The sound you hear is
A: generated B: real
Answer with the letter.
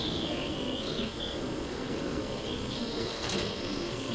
A